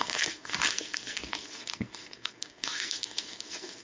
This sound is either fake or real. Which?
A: fake